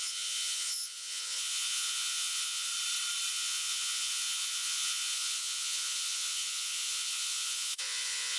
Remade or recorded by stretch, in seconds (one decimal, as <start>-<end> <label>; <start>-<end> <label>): 0.0-2.7 remade; 2.7-3.3 recorded; 3.3-8.4 remade